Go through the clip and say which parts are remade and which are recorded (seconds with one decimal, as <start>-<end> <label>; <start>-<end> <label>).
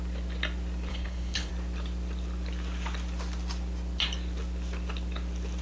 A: 0.0-0.9 recorded; 0.9-1.5 remade; 1.5-5.6 recorded